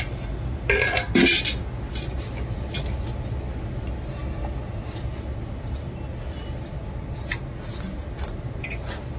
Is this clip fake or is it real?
real